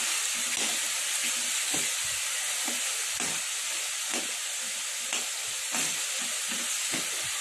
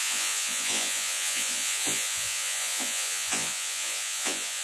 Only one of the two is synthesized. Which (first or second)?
second